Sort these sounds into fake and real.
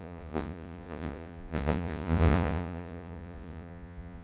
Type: fake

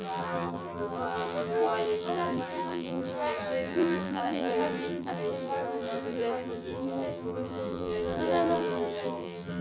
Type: fake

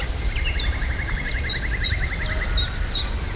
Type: fake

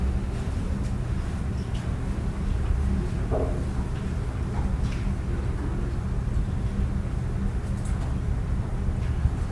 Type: real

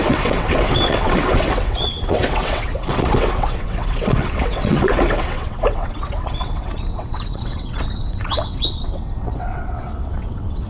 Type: fake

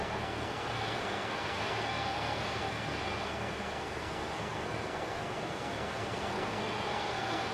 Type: fake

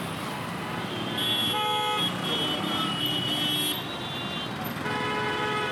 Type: real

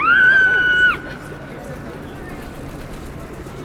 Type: real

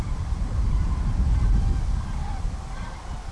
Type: real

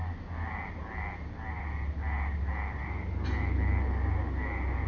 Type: real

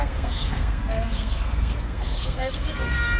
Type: fake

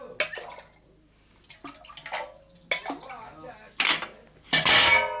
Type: real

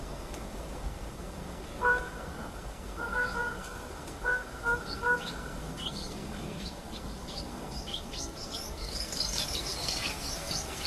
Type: fake